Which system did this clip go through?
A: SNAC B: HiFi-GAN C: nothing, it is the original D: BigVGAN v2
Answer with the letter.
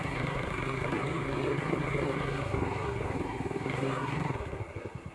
A